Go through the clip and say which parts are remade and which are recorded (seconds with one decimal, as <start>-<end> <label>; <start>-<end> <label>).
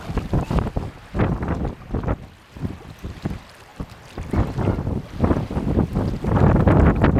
0.0-7.2 recorded